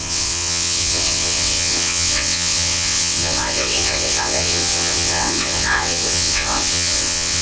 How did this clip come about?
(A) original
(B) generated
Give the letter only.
B